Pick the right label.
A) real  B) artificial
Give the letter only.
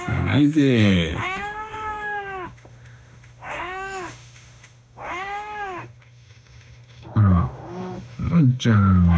B